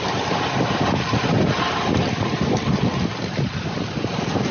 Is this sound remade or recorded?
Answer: recorded